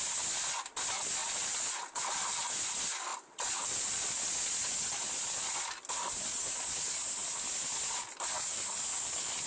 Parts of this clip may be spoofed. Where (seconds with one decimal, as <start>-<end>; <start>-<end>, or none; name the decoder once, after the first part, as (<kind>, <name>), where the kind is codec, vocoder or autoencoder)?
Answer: 1.2-2.6 (vocoder, BigVGAN v2); 3.1-4.3; 8.5-9.5